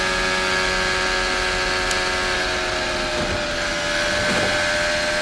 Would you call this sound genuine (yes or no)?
yes